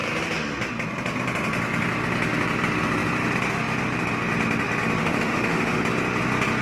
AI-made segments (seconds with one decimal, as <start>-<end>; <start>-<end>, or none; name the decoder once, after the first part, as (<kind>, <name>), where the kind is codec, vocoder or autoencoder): 5.0-5.8 (autoencoder, DAC-VAE)